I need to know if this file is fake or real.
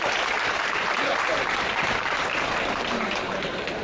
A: fake